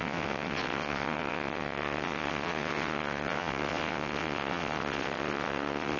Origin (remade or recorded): remade